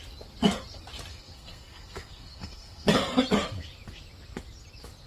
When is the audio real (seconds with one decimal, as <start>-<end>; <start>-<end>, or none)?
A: 0.0-1.1; 2.9-5.1